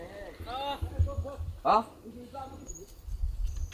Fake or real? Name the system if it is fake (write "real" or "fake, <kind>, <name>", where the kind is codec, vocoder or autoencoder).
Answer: real